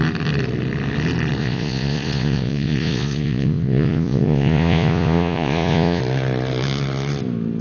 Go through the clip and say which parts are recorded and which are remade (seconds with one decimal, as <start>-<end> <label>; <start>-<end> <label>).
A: 0.0-1.4 recorded; 1.4-6.0 remade; 6.0-7.6 recorded